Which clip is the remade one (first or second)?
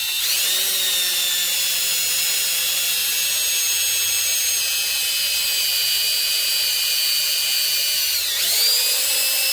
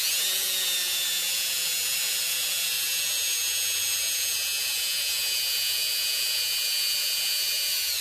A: second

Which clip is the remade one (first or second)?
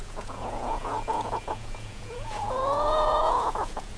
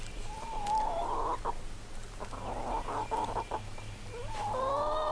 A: first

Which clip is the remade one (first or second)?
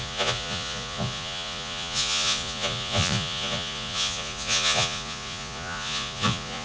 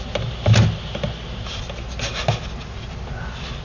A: first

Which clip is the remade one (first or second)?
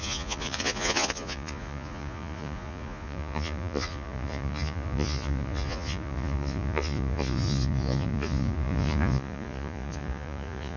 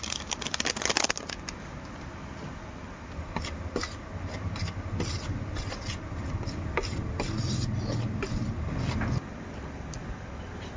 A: first